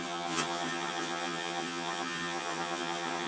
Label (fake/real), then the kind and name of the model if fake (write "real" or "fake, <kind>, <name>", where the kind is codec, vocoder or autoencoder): fake, vocoder, HiFi-GAN